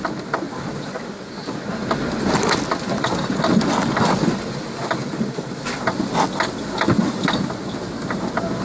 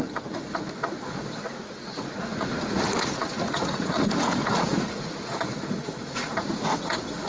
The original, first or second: first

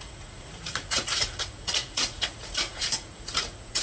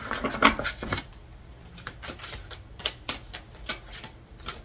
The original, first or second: second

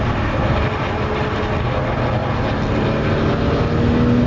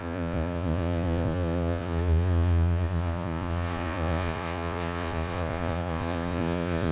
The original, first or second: first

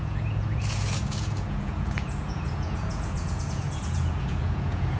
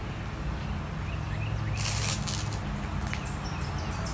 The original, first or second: second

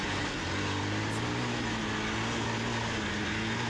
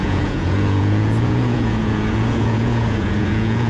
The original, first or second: first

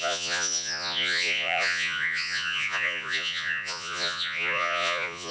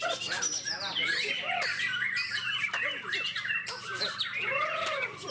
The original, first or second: second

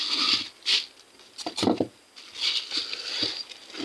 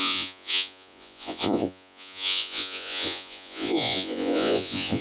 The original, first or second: first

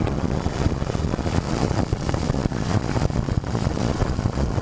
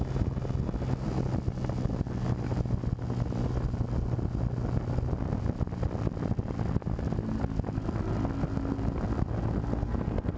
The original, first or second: second